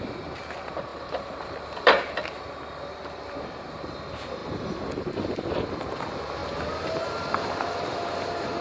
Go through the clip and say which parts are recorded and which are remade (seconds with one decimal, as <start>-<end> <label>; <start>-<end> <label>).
0.0-4.4 remade; 4.4-5.4 recorded; 5.4-6.4 remade; 6.4-8.6 recorded